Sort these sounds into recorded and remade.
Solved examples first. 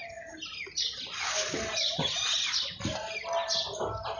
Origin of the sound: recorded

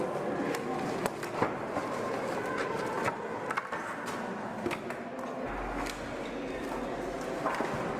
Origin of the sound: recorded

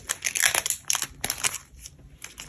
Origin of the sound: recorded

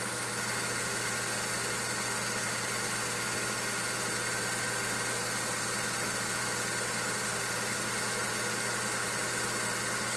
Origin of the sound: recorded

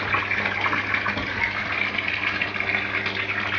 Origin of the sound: recorded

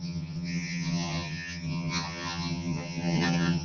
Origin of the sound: remade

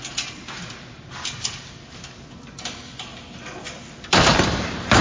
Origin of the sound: recorded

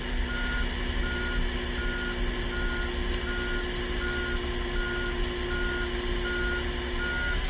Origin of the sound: recorded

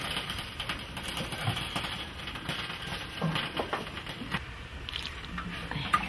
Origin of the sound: recorded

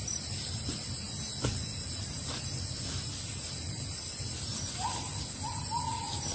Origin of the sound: recorded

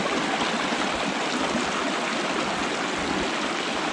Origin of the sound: recorded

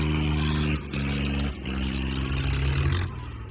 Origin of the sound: recorded